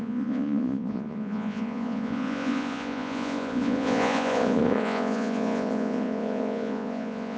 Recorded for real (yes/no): no